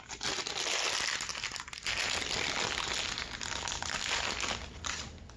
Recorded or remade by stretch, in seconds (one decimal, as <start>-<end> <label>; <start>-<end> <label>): 0.0-5.4 recorded